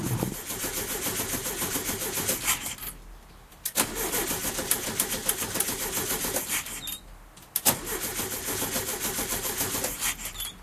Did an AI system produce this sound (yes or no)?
no